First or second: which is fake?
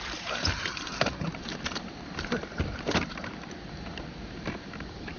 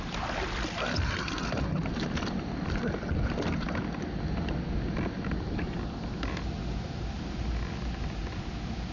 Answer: first